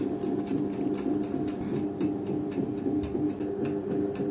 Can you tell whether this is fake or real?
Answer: real